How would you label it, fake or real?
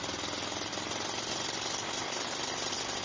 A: real